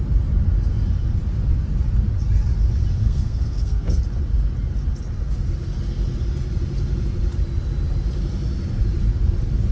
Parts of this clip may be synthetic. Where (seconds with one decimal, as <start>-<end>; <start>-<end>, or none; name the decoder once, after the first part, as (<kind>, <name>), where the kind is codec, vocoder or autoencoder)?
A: 3.0-4.0 (codec, SNAC)